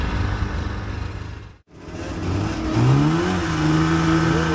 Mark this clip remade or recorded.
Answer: recorded